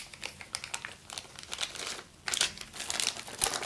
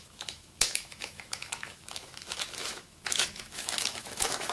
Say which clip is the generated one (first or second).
second